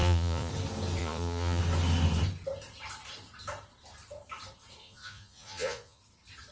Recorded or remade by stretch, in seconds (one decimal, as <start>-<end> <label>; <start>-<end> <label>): 0.0-0.5 remade; 0.5-1.0 recorded; 1.0-1.6 remade; 1.6-4.8 recorded; 4.8-6.0 remade; 6.0-6.5 recorded